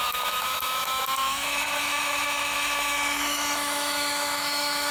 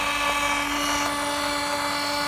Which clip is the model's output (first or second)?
first